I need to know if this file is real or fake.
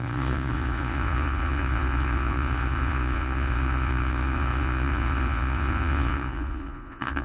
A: fake